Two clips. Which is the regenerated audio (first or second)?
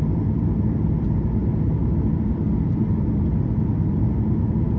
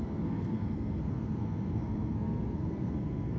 second